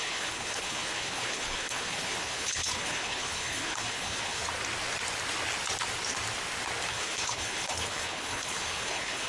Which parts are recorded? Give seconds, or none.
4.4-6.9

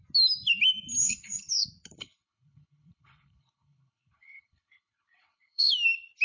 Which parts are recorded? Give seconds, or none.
0.0-1.0; 1.5-2.0; 5.7-6.2

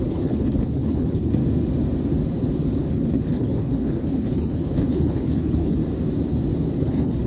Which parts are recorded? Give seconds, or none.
1.4-2.9; 5.8-6.8

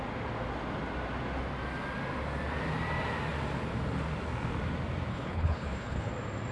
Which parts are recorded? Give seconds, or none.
0.0-5.1; 6.1-6.5

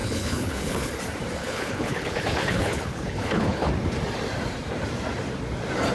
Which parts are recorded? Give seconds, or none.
0.9-1.4; 3.7-5.9